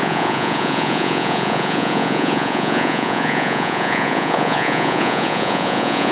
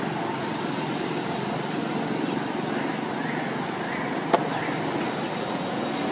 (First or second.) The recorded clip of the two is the second